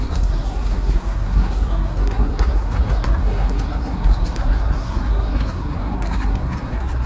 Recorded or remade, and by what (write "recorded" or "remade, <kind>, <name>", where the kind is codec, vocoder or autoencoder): remade, codec, SNAC